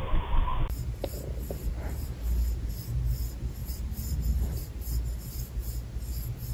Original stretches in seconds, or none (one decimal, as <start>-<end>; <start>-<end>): 0.0-3.6; 4.6-6.5